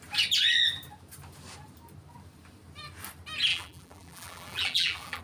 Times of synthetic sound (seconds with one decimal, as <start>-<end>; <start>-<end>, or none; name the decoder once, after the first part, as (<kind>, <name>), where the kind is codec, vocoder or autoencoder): 3.5-5.2 (vocoder, BigVGAN v2)